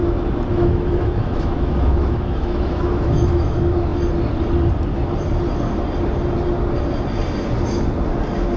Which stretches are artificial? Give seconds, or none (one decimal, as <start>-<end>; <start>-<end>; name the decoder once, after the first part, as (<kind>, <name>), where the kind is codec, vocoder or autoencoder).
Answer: 0.5-3.9 (autoencoder, DAC-VAE)